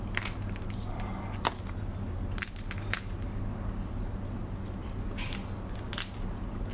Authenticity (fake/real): real